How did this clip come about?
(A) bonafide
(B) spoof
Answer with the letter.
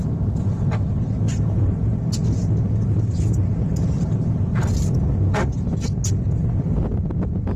A